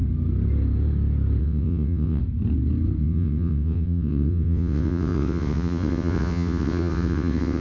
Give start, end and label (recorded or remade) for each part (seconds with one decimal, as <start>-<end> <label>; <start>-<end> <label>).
0.0-1.4 recorded; 1.4-2.2 remade; 2.2-3.0 recorded; 3.0-7.6 remade